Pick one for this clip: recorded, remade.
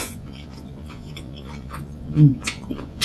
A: remade